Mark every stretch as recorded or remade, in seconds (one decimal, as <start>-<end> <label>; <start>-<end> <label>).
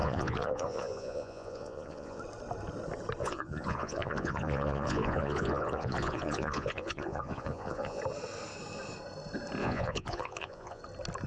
0.0-2.2 remade; 2.2-3.2 recorded; 3.2-8.0 remade; 8.0-9.6 recorded; 9.6-10.8 remade; 10.8-11.3 recorded